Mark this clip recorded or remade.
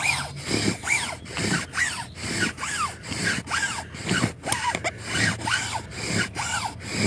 recorded